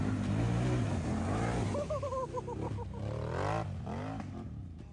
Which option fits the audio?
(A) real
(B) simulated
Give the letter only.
A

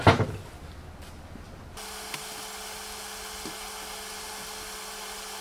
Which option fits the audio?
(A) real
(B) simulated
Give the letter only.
A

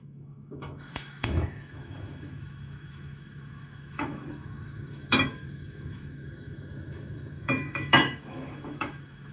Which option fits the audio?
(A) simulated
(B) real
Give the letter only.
A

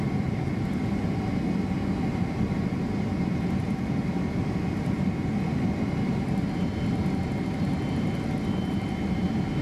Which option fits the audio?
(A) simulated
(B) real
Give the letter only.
A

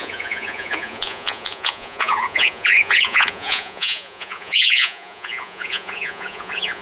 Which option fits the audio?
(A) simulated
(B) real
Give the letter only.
A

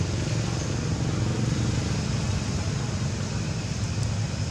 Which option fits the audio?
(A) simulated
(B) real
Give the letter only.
B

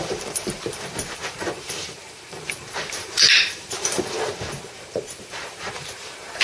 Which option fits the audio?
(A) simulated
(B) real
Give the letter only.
A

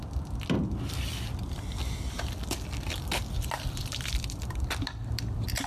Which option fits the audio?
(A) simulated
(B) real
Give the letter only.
A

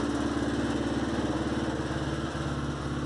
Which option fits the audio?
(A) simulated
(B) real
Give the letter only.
B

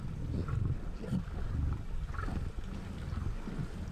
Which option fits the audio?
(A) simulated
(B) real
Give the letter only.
B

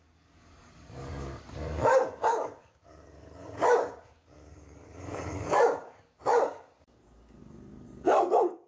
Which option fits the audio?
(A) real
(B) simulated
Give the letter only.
B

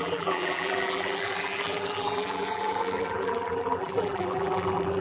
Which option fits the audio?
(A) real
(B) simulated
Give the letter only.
B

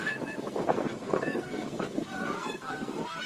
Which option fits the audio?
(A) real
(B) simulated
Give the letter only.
B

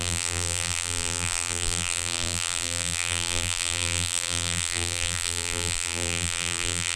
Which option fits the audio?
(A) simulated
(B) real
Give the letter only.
A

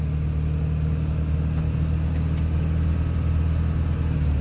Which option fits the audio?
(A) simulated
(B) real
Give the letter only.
B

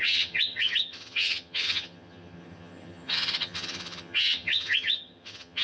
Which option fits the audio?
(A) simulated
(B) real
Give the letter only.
A